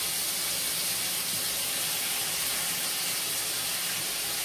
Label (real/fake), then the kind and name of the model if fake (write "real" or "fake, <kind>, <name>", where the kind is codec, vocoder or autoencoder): real